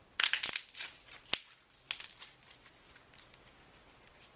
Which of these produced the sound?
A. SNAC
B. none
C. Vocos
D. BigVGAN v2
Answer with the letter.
B